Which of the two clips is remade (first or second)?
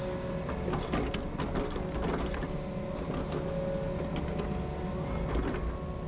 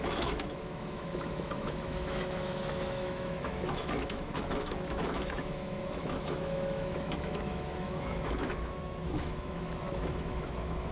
second